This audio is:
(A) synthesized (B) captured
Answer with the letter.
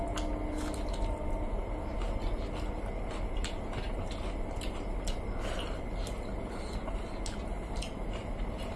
B